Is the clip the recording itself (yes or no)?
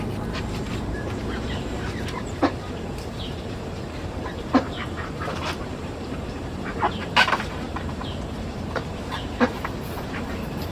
no